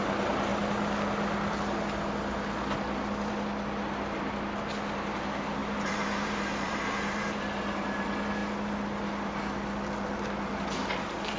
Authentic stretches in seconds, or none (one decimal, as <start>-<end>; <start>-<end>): 0.0-5.6; 7.4-11.4